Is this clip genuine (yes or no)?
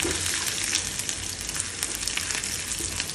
yes